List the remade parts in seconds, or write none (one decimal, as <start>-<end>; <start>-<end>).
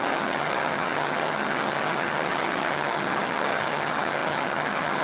0.0-5.0